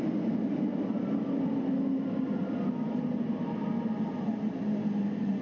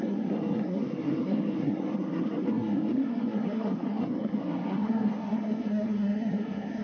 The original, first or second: first